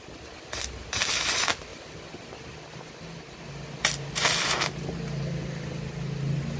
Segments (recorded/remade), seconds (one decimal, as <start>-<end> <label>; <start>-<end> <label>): 0.0-6.6 recorded